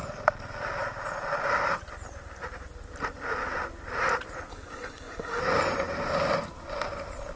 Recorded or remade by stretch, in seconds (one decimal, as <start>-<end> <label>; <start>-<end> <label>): 0.0-4.5 recorded; 4.5-5.4 remade; 5.4-7.4 recorded